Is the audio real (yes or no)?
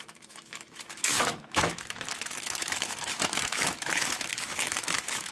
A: no